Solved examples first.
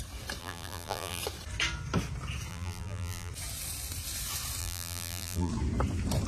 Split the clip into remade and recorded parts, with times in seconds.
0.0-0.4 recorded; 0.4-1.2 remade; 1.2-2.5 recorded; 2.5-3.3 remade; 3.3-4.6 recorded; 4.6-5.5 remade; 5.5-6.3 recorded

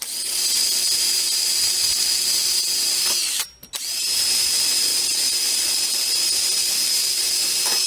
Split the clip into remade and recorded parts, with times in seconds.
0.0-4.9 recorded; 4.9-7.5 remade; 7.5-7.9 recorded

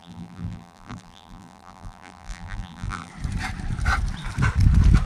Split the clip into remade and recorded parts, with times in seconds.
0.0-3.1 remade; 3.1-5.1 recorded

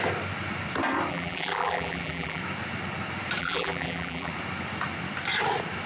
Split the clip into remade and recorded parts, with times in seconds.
0.0-1.1 recorded; 1.1-2.4 remade; 2.4-3.4 recorded; 3.4-4.3 remade; 4.3-5.9 recorded

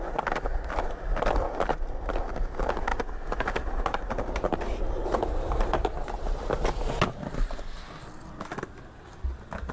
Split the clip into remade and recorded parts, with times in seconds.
0.0-9.7 recorded

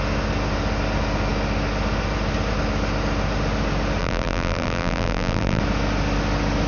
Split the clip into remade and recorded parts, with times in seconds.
0.0-4.0 recorded; 4.0-5.6 remade; 5.6-6.7 recorded